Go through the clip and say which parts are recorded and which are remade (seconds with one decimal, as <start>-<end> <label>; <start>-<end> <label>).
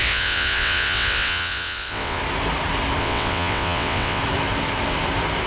0.0-2.2 remade; 2.2-3.0 recorded; 3.0-4.2 remade; 4.2-5.5 recorded